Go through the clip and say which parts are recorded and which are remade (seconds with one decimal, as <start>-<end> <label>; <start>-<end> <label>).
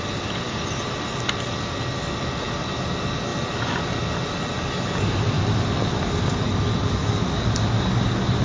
0.0-8.4 recorded